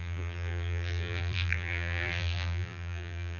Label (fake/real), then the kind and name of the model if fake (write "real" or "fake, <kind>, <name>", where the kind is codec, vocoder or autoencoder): fake, vocoder, BigVGAN v2